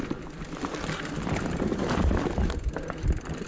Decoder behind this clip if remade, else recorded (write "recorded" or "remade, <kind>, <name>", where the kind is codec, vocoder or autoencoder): recorded